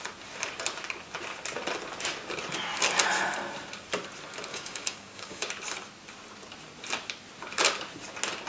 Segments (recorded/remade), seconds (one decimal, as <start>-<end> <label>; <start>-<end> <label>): 0.0-4.5 recorded; 4.5-5.5 remade; 5.5-8.5 recorded